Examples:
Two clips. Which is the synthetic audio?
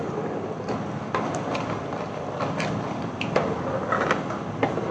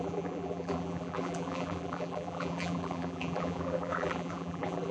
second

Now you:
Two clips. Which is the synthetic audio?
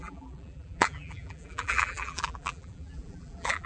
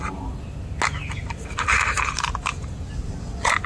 first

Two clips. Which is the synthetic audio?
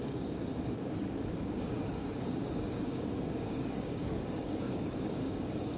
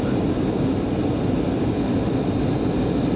first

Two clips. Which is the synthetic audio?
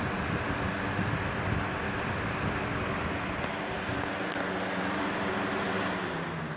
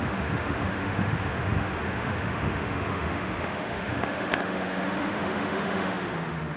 second